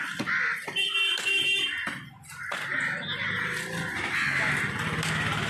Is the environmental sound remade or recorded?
recorded